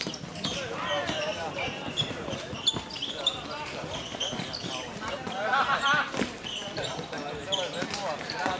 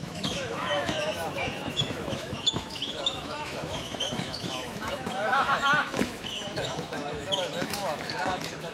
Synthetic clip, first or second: second